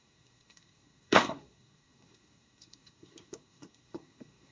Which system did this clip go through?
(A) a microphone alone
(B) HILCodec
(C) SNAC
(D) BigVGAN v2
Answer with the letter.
C